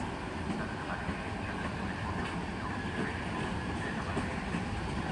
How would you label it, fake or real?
fake